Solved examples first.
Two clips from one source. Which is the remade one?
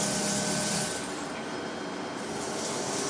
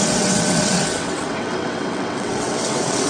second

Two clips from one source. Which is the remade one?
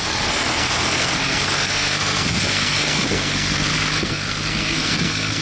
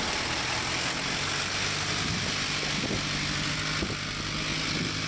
first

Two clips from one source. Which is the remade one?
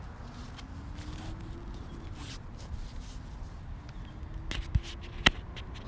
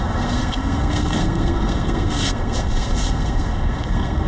second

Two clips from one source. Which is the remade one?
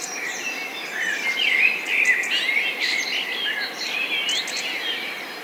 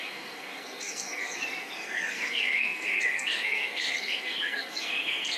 second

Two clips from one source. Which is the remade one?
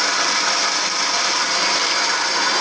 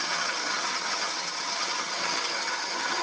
second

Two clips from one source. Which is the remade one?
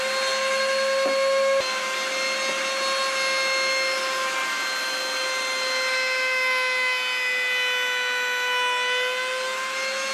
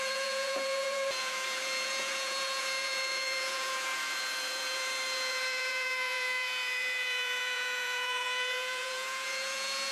second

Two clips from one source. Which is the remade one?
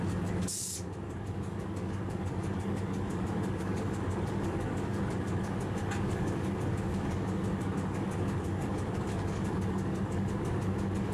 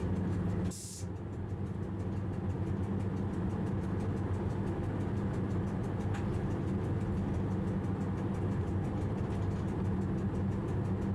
first